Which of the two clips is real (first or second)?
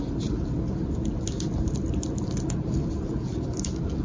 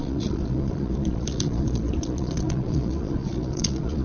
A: first